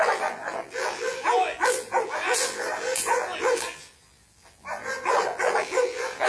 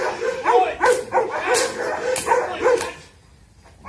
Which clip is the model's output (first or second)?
first